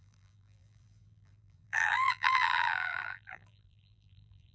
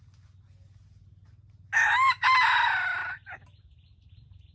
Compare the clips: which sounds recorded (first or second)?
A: second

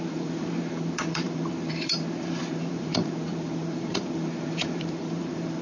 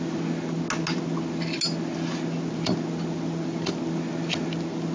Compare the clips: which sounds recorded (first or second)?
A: second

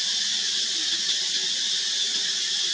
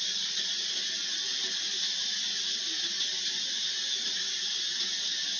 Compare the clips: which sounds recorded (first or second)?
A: second